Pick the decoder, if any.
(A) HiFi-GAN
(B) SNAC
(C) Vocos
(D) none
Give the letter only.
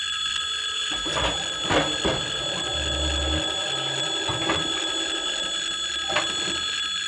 D